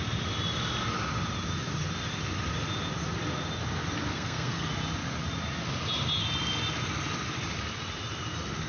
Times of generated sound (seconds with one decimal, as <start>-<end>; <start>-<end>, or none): 4.1-4.7